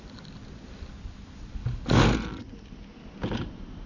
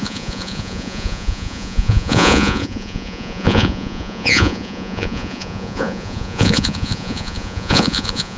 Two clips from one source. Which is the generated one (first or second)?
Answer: second